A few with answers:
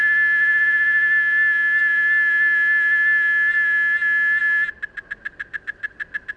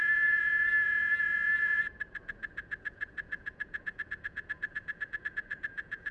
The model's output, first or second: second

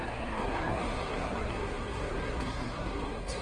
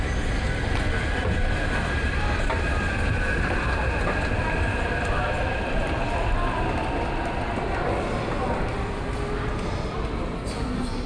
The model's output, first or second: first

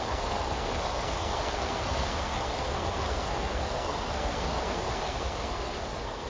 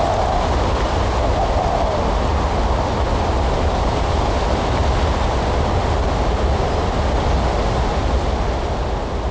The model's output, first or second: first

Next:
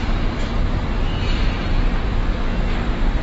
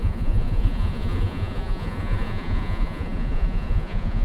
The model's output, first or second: second